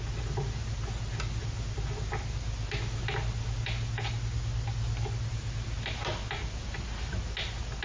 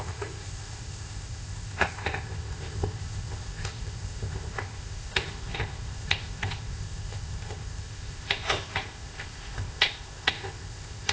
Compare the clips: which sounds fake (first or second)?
second